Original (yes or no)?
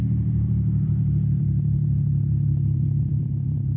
no